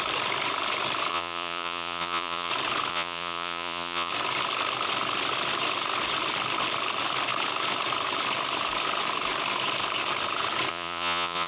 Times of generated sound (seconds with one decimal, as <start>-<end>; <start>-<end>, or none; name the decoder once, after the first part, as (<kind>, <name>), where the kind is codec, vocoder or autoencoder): 1.1-2.5 (vocoder, Vocos); 2.9-4.1; 10.7-11.5